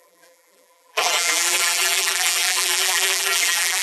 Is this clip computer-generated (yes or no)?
yes